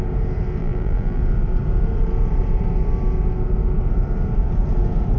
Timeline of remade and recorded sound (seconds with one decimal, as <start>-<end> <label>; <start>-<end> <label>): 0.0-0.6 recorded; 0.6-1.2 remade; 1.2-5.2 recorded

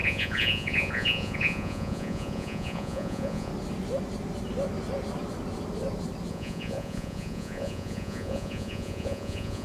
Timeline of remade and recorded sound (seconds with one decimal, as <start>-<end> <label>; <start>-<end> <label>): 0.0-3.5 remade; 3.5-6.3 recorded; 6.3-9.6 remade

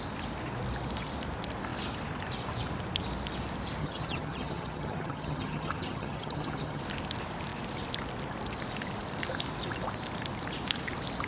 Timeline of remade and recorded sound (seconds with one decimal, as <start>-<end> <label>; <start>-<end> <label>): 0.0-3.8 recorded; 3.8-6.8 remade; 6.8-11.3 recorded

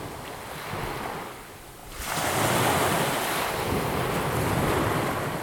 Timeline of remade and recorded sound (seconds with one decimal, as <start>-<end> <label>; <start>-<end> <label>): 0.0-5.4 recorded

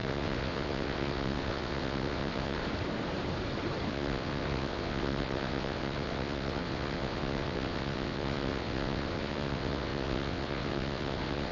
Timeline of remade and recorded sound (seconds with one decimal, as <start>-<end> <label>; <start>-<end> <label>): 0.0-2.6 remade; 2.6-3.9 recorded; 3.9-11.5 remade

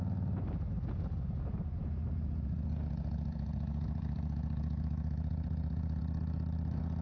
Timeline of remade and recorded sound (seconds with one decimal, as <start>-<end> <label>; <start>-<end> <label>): 0.0-1.8 recorded; 1.8-6.0 remade; 6.0-7.0 recorded